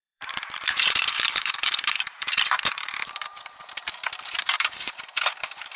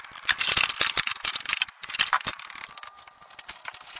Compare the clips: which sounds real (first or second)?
second